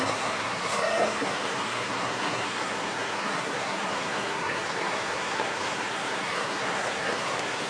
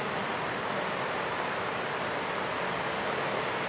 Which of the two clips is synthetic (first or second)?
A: first